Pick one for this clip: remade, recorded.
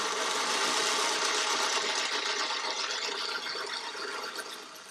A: recorded